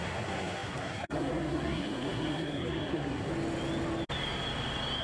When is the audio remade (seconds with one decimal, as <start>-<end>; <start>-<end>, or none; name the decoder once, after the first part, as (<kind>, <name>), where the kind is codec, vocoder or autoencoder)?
0.0-3.3 (codec, SNAC)